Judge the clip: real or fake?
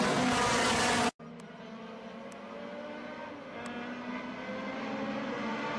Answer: real